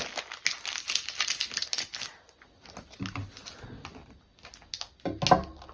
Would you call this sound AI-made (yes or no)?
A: no